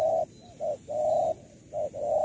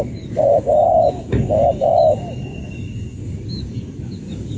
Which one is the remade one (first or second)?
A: second